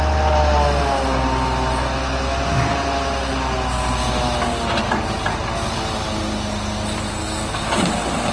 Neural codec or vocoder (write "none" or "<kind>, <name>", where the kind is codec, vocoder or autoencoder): none